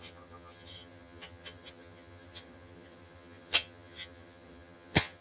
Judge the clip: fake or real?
fake